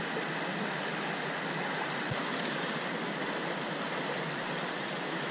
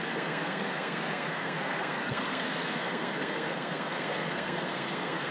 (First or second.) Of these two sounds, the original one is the first